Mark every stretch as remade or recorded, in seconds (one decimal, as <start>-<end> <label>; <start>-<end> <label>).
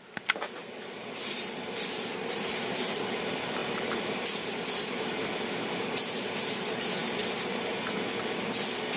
0.0-2.1 recorded; 2.1-3.0 remade; 3.0-3.6 recorded; 3.6-6.3 remade; 6.3-9.0 recorded